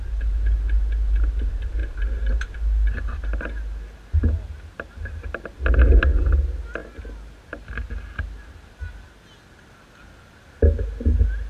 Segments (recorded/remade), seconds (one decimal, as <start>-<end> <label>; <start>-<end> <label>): 0.0-11.5 recorded